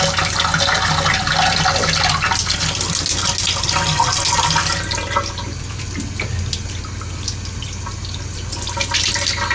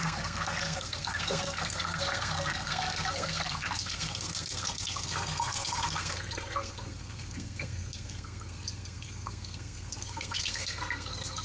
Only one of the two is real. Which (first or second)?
first